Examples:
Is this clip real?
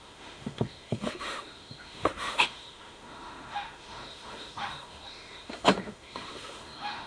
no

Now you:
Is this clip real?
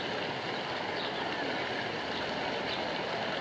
yes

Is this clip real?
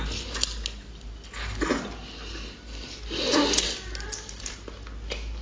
yes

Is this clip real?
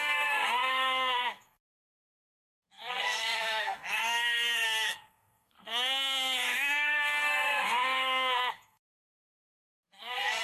no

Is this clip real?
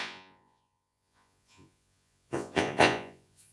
no